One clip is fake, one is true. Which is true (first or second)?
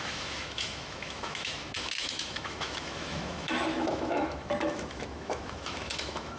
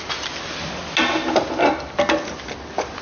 second